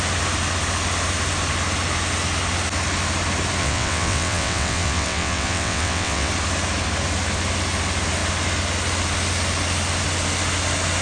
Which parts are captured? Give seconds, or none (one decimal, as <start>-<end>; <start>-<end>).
0.0-3.6; 6.3-11.0